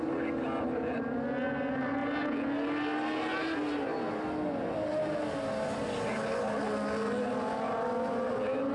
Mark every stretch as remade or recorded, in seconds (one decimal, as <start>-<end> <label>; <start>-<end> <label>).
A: 0.0-8.7 recorded